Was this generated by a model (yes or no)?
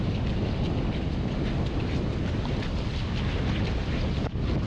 no